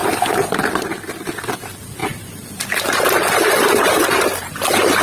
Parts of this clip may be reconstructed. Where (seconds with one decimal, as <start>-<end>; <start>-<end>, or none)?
2.0-2.6; 3.7-4.6